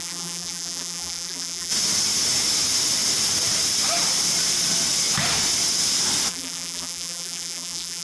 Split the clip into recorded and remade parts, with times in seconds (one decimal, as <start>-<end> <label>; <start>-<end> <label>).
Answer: 0.0-1.7 remade; 1.7-6.3 recorded; 6.3-8.0 remade